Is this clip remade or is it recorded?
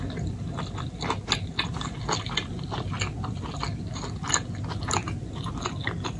recorded